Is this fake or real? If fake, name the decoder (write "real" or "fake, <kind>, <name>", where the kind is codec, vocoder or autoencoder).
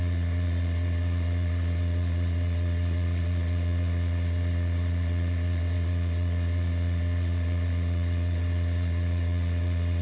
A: fake, vocoder, WaveNeXt